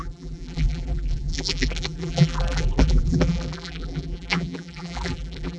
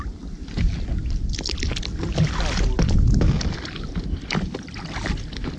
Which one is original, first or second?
second